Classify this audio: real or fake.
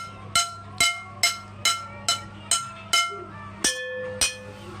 real